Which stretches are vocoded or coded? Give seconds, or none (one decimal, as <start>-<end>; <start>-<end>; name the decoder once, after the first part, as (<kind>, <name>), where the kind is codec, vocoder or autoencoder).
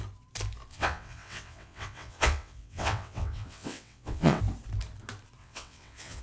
0.7-4.4 (vocoder, WaveNeXt); 5.4-6.2